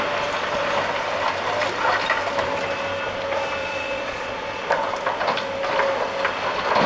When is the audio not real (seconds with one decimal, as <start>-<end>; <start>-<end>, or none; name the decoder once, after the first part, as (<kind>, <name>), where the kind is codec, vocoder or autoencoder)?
3.6-4.6 (vocoder, Vocos)